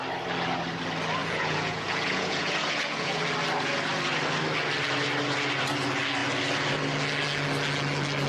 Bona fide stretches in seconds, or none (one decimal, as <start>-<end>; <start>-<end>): 0.0-1.2; 3.2-8.3